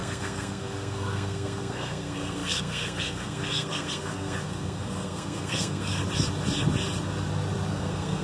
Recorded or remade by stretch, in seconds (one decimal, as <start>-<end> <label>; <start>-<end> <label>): 0.0-6.0 remade; 6.0-7.7 recorded; 7.7-8.2 remade